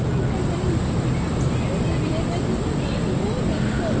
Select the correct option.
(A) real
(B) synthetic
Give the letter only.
A